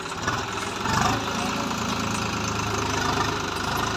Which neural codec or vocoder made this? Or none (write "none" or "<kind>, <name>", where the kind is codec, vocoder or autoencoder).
none